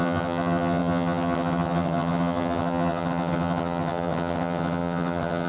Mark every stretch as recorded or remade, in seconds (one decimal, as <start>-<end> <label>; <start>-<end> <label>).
0.0-5.5 remade